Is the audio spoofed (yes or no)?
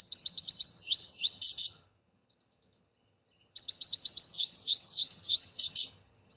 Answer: yes